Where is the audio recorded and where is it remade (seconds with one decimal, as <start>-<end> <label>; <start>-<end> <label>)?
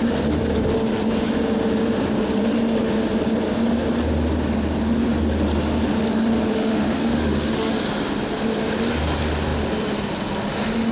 0.0-6.5 recorded; 6.5-7.7 remade; 7.7-10.9 recorded